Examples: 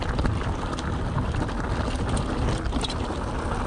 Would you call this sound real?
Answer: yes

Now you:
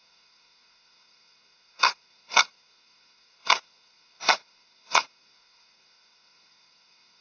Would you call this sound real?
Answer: no